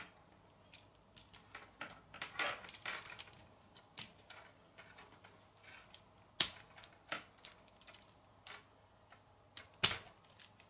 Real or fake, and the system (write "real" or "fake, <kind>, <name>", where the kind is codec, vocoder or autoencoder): real